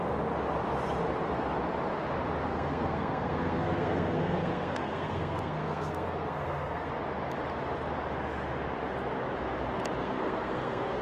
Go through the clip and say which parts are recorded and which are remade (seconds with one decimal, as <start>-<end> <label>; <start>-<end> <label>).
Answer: 0.0-2.4 recorded; 2.4-6.9 remade; 6.9-10.0 recorded; 10.0-11.0 remade